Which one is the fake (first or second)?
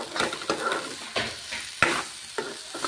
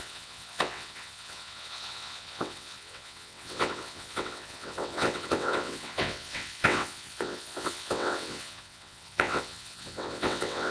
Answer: second